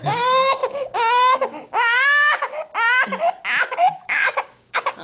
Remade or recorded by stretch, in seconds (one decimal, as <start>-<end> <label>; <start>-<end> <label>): 0.0-2.7 remade; 2.7-3.6 recorded; 3.6-5.0 remade